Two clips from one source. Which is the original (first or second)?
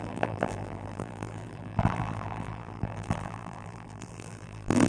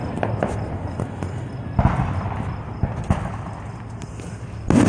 second